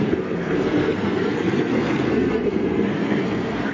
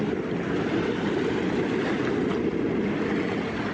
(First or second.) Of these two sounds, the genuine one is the second